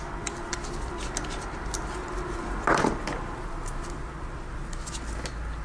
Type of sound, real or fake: real